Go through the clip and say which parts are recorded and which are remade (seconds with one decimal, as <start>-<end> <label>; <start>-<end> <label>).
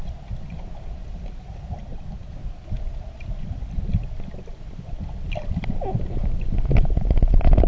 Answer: 0.0-1.8 recorded; 1.8-2.3 remade; 2.3-7.7 recorded